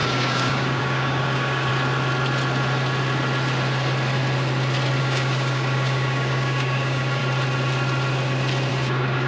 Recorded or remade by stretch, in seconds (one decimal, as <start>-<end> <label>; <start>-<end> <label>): 0.0-1.7 remade; 1.7-5.0 recorded; 5.0-7.2 remade; 7.2-8.7 recorded; 8.7-9.3 remade